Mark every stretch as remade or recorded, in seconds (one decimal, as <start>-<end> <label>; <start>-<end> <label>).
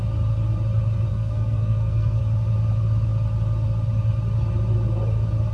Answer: 0.0-1.1 recorded; 1.1-2.2 remade; 2.2-5.5 recorded